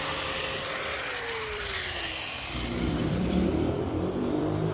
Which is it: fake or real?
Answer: fake